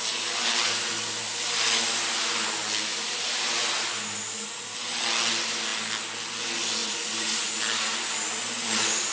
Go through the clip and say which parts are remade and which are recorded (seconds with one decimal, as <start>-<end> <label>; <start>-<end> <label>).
0.0-2.9 recorded; 2.9-3.4 remade; 3.4-6.8 recorded; 6.8-7.6 remade; 7.6-9.1 recorded